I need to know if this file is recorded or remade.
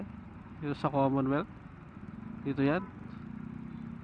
recorded